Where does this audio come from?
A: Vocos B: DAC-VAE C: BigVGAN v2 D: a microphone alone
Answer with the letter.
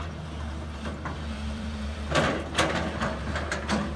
C